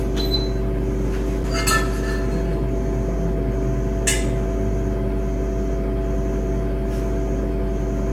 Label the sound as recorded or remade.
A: recorded